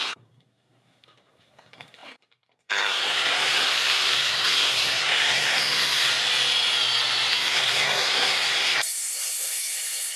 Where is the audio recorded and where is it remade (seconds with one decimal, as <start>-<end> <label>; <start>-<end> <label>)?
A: 0.0-6.1 remade; 6.1-7.3 recorded; 7.3-10.2 remade